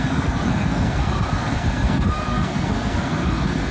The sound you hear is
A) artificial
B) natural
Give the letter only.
A